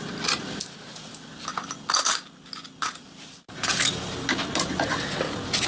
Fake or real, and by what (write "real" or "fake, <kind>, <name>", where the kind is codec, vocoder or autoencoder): real